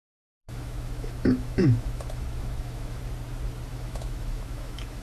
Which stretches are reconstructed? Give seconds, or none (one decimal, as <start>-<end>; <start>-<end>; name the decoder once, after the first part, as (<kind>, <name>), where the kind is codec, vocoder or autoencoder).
0.0-3.0 (autoencoder, DAC-VAE); 3.7-5.0